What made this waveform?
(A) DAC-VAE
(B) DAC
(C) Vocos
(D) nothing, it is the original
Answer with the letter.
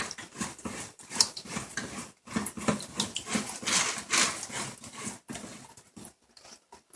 D